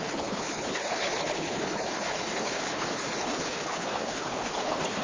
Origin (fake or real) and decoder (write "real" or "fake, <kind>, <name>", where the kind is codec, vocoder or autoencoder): fake, codec, HILCodec